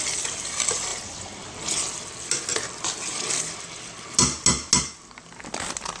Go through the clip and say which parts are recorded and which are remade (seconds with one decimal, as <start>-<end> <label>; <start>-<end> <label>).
0.0-6.0 recorded